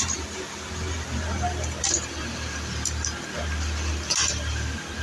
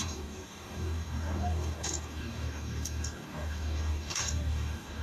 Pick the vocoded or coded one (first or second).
second